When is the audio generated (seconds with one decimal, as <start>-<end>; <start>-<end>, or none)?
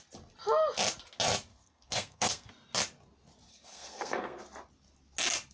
1.5-2.5; 3.5-4.4